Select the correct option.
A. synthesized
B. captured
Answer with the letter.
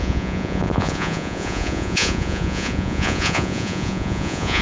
A